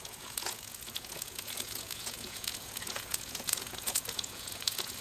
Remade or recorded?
remade